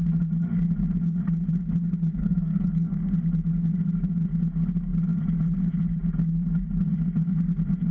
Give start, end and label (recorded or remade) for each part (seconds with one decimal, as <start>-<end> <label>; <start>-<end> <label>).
0.0-2.2 recorded; 2.2-3.1 remade; 3.1-7.9 recorded